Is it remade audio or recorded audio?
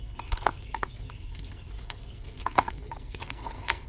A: remade